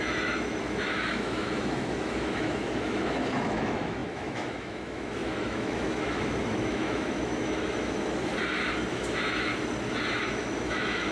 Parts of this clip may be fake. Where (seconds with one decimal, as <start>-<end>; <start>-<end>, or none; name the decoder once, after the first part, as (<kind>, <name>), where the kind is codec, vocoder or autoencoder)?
0.0-8.3 (autoencoder, DAC-VAE); 8.9-9.5; 10.1-11.1